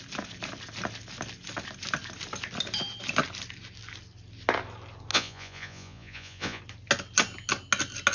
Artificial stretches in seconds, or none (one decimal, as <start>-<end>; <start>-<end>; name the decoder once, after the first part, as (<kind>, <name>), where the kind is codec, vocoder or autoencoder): 5.1-6.6 (vocoder, Vocos)